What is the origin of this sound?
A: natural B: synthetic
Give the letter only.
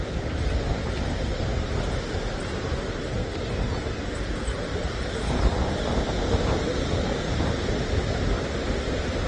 A